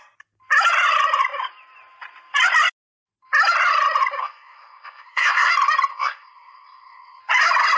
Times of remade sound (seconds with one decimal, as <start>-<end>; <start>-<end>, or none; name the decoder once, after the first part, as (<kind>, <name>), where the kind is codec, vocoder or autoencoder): 4.2-5.5 (codec, SNAC); 5.9-7.2